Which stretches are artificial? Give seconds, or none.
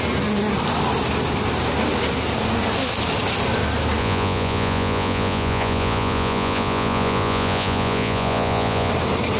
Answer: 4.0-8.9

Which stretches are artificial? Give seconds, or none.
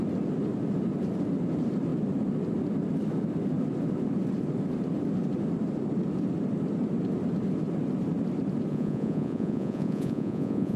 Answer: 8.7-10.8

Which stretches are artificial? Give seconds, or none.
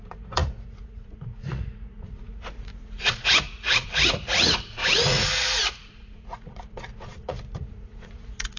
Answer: 0.0-8.6